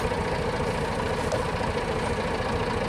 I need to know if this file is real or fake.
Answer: real